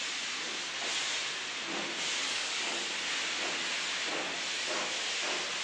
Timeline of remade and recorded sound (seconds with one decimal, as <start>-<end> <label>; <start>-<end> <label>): 0.0-2.2 recorded; 2.2-2.8 remade; 2.8-5.6 recorded